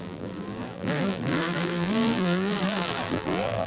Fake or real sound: fake